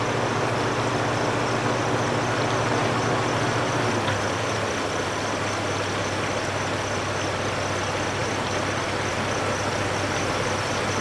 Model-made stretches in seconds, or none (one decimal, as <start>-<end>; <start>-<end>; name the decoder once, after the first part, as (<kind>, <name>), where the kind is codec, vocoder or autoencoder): none